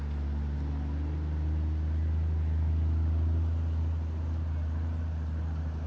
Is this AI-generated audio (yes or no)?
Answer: no